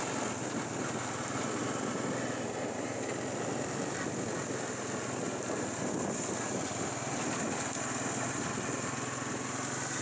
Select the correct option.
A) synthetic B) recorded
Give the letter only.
B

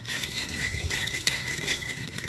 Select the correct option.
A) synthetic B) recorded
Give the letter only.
A